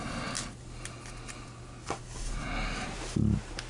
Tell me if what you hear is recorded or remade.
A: recorded